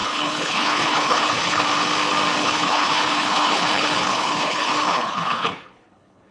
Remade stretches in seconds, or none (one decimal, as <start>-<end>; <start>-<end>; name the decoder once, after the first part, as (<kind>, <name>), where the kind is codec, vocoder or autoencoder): 0.0-1.6 (codec, HILCodec); 2.4-6.3